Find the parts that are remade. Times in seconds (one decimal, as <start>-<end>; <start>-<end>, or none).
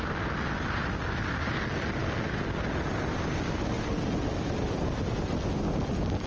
none